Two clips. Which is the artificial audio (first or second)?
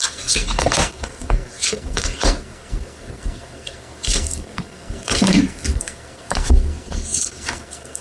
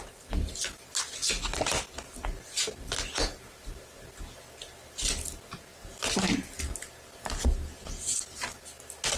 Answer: first